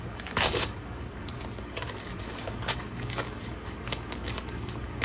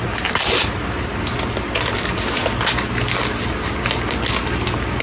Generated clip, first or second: first